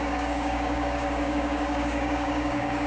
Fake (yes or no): yes